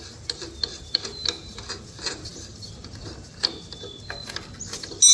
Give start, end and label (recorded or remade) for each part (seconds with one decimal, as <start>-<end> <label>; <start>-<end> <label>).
0.0-2.3 recorded; 2.3-2.9 remade; 2.9-5.1 recorded